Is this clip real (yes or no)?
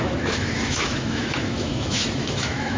no